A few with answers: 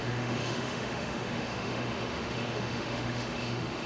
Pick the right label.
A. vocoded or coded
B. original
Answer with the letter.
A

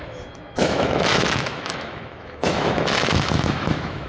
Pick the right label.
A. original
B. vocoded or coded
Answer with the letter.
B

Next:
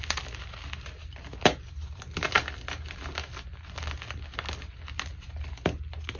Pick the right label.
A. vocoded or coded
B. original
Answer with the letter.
B